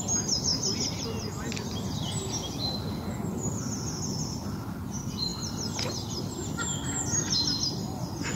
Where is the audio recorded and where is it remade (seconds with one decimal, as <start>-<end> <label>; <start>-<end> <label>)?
0.0-8.3 recorded